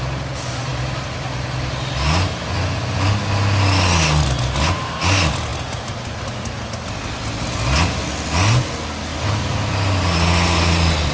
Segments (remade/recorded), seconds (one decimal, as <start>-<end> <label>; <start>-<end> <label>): 0.0-11.1 recorded